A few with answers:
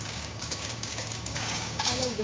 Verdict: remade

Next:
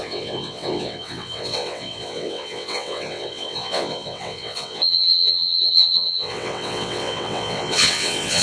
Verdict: remade